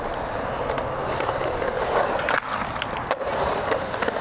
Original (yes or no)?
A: yes